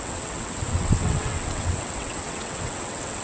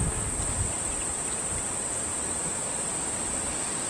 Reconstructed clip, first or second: first